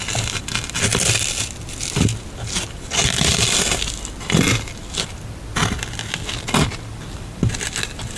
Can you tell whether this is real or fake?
real